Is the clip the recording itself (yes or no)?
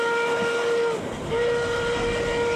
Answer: yes